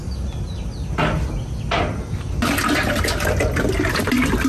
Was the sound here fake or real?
real